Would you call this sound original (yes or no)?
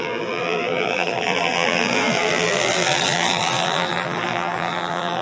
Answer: no